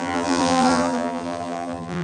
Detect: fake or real fake